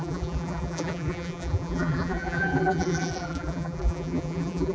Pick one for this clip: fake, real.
fake